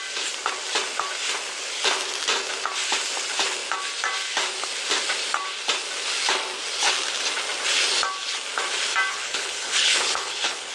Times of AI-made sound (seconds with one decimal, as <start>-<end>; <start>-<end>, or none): 9.1-10.7